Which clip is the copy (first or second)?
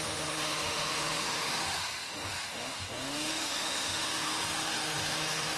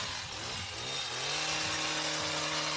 first